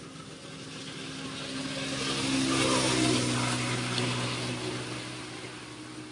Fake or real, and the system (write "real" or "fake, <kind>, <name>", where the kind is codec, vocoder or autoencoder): real